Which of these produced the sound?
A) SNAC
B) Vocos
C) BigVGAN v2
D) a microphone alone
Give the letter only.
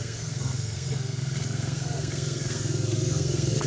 A